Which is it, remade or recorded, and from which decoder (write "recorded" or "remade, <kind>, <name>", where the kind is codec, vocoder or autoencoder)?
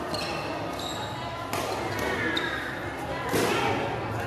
recorded